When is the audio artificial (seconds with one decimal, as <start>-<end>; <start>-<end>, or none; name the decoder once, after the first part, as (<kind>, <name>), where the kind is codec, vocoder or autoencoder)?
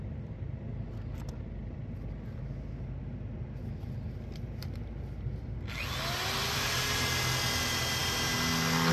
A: none